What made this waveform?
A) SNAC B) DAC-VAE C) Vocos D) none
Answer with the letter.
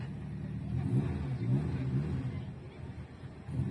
D